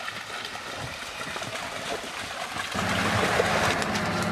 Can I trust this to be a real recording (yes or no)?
yes